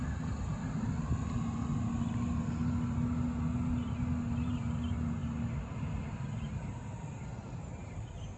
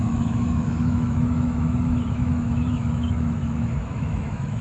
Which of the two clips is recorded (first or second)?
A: first